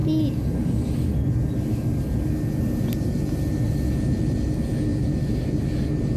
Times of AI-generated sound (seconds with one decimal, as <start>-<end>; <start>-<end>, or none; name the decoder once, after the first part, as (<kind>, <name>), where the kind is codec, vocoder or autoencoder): none